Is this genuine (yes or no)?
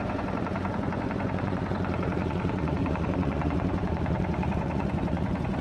no